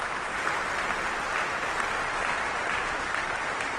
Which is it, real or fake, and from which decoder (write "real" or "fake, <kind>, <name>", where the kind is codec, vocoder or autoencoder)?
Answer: real